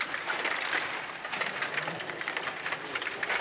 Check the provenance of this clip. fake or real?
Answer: fake